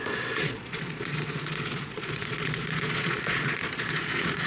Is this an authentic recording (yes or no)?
no